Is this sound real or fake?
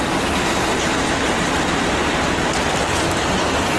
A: real